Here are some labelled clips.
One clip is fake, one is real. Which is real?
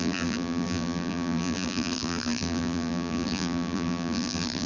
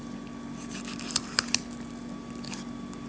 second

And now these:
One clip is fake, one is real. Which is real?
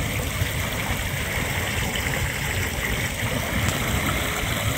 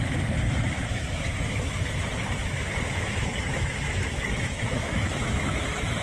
first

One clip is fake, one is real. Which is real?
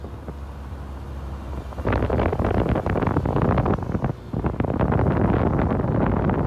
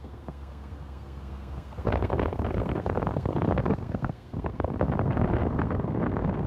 first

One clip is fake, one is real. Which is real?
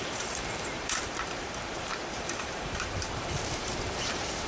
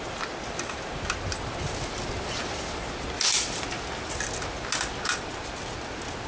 second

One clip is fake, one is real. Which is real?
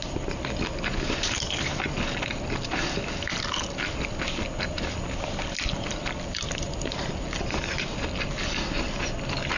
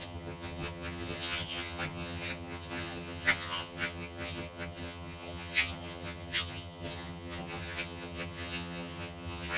first